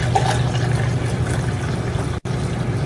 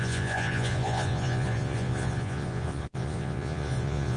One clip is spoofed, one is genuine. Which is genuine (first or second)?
first